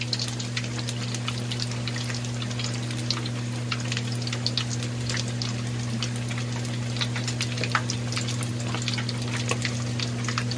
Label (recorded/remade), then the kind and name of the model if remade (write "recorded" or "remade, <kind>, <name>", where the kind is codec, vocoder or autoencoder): recorded